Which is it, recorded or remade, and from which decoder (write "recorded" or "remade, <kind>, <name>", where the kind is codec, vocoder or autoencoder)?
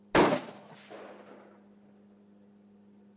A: recorded